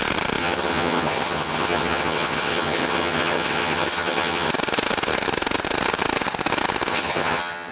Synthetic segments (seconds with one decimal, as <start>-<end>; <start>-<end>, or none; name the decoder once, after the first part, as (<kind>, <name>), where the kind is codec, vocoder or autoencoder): 0.4-4.5 (vocoder, HiFi-GAN); 6.9-7.7